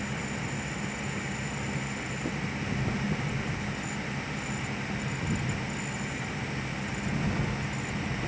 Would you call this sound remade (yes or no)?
no